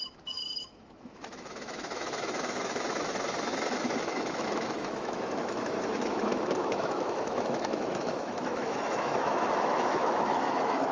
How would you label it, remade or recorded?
remade